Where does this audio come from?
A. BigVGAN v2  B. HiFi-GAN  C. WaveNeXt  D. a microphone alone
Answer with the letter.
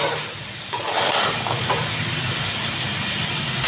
D